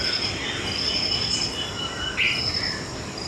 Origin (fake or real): real